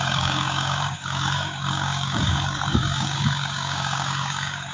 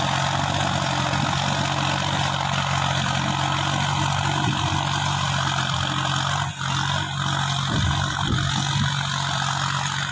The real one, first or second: second